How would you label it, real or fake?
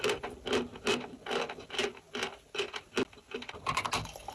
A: real